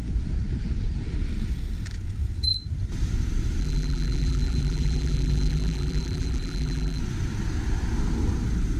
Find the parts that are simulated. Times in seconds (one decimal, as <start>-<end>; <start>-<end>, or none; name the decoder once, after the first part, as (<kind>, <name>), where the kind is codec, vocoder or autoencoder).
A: 3.6-7.0 (vocoder, BigVGAN v2)